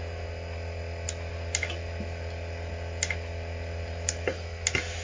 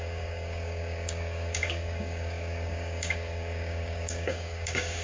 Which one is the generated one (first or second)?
second